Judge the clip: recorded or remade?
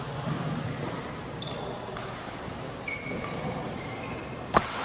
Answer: recorded